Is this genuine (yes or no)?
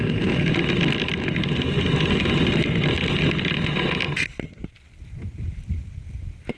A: yes